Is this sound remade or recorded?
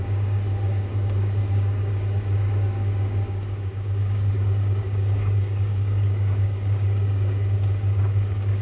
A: remade